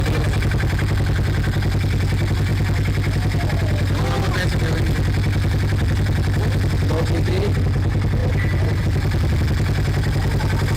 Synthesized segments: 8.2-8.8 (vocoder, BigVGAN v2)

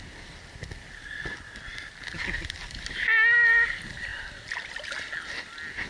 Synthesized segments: none

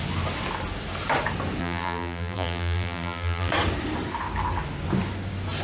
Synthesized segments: 1.6-3.5 (vocoder, BigVGAN v2)